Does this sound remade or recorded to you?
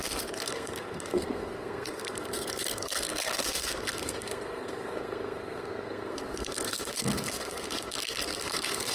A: remade